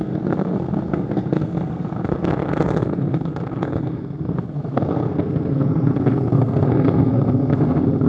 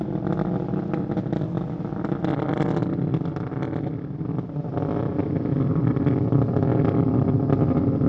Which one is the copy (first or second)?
first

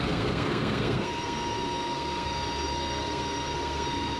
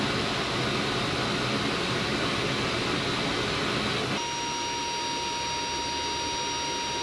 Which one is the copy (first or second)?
first